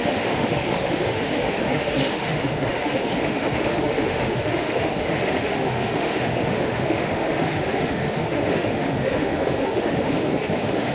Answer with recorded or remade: remade